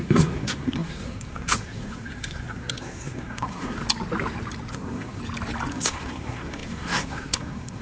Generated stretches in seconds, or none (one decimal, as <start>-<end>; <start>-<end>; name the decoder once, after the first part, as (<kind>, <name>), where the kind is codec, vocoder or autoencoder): 0.0-3.8 (codec, SNAC); 4.7-5.2; 5.7-7.8